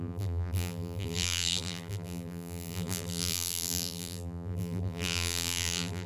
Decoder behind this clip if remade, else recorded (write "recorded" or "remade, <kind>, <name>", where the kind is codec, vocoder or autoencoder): remade, vocoder, BigVGAN v2